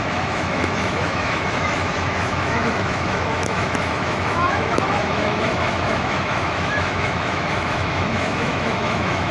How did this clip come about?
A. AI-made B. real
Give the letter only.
A